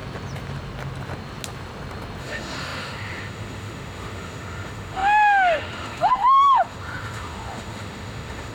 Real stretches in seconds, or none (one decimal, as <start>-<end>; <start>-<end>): 0.0-2.2